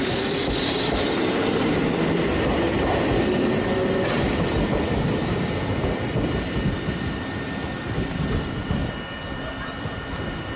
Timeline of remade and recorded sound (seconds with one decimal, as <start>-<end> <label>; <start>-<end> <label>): 0.0-8.8 remade; 8.8-9.8 recorded; 9.8-10.6 remade